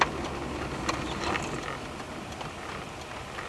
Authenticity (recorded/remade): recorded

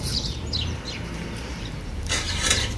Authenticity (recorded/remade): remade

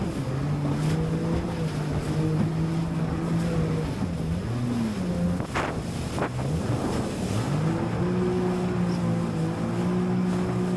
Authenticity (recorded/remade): recorded